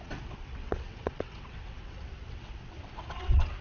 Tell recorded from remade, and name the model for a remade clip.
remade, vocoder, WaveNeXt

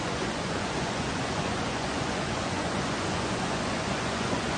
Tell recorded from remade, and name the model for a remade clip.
remade, vocoder, Vocos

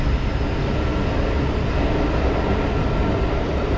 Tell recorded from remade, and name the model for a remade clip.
recorded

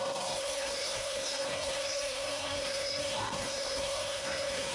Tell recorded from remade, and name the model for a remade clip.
remade, codec, SNAC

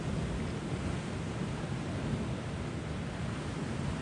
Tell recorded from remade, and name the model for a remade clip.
recorded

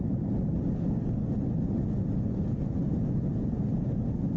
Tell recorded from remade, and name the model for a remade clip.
recorded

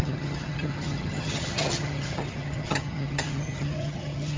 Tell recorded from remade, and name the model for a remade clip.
remade, vocoder, HiFi-GAN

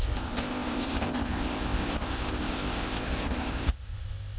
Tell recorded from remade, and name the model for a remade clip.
remade, codec, ZipCodec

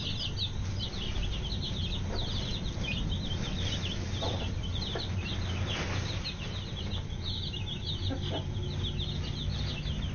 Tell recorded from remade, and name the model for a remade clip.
recorded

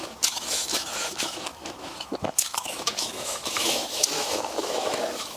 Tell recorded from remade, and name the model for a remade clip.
remade, autoencoder, DAC-VAE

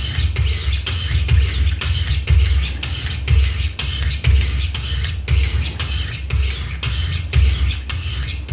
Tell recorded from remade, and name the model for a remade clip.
recorded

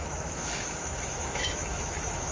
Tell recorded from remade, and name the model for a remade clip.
remade, autoencoder, DAC-VAE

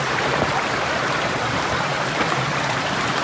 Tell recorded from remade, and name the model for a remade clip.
remade, vocoder, BigVGAN v2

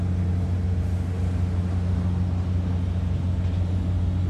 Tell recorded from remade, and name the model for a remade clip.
recorded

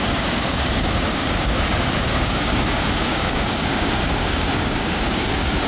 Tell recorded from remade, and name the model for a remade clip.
remade, codec, DAC